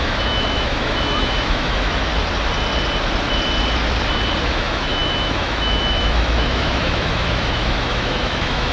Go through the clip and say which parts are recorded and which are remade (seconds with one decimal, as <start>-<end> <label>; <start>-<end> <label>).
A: 0.0-2.1 remade; 2.1-4.4 recorded; 4.4-8.7 remade